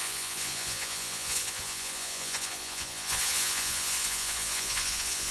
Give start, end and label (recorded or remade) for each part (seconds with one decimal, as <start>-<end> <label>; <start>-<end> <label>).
0.0-5.3 remade